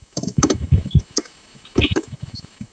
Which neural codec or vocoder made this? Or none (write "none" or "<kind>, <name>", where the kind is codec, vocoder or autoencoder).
autoencoder, DAC-VAE